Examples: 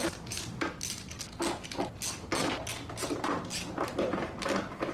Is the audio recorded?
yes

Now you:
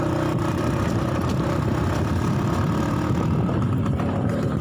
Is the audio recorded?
no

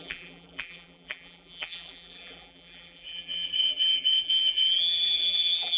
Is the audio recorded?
no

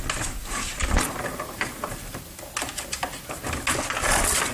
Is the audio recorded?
yes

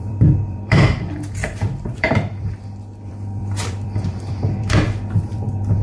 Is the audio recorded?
no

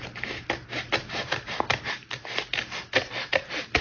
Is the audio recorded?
yes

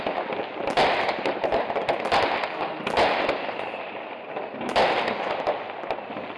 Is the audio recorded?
yes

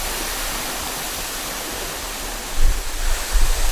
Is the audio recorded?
yes